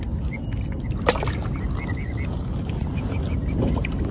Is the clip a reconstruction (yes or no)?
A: no